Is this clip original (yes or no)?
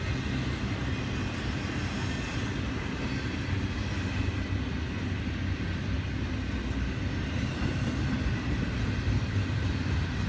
yes